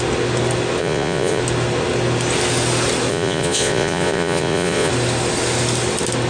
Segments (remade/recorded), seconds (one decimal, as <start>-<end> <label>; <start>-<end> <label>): 0.0-0.8 recorded; 0.8-1.4 remade; 1.4-3.1 recorded; 3.1-4.9 remade; 4.9-6.3 recorded